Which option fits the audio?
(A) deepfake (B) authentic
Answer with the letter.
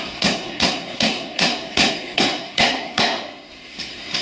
A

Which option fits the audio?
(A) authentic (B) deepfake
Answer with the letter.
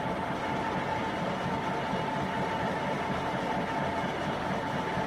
B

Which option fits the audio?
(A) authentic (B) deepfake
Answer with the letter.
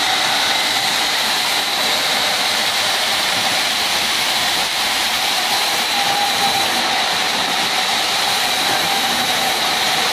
B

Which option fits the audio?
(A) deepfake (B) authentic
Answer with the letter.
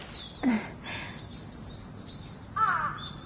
B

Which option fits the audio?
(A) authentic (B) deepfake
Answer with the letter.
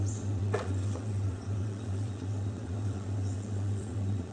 B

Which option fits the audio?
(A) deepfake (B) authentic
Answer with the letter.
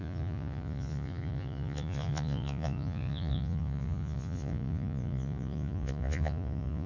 A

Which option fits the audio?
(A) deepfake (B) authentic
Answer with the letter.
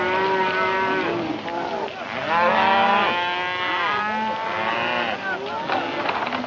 B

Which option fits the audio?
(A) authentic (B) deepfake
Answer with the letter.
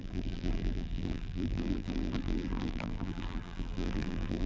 B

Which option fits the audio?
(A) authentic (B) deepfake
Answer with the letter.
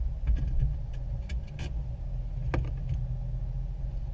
A